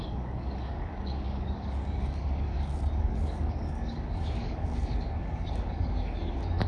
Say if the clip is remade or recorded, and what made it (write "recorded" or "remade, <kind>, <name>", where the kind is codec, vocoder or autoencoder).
remade, codec, DAC